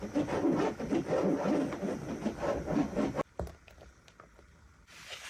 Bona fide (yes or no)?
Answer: yes